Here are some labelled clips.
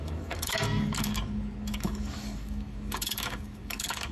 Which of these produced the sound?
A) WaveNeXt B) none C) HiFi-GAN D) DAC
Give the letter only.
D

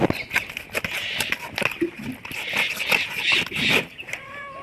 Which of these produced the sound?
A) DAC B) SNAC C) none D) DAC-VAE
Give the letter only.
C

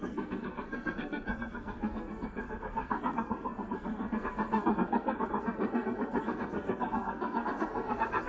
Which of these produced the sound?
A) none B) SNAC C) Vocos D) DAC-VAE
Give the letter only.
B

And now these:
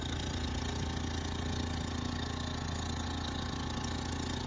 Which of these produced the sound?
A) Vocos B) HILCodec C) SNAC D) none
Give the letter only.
D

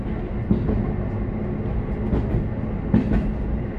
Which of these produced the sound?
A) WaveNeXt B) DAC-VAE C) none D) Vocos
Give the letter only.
C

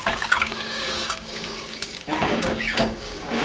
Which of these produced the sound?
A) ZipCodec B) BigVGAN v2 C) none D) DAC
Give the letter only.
D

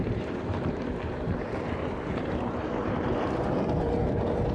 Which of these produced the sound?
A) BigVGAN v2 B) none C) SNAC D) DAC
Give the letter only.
A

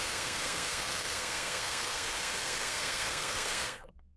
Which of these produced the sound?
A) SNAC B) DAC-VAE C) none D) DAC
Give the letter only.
A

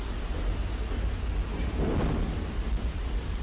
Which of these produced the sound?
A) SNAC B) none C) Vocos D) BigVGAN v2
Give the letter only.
B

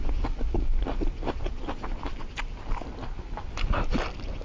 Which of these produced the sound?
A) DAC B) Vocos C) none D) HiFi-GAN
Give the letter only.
C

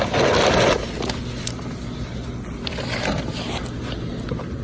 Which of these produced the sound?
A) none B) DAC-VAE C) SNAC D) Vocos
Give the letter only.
A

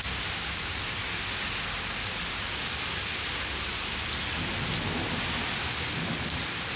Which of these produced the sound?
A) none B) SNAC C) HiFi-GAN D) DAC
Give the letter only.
A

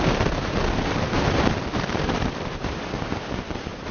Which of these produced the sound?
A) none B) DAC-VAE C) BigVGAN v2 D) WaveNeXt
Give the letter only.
C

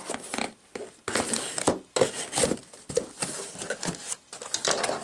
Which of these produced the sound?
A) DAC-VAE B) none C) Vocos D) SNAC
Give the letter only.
B